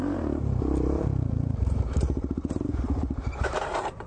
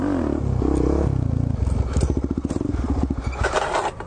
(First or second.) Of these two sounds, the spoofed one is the first